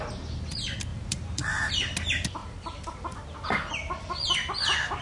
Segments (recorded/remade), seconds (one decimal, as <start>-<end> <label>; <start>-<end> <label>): 0.0-0.9 recorded; 0.9-1.7 remade; 1.7-2.4 recorded; 2.4-3.0 remade; 3.0-5.0 recorded